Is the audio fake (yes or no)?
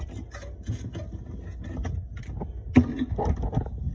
no